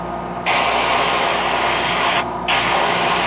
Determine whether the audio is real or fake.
real